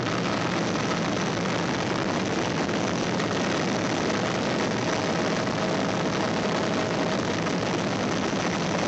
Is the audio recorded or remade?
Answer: recorded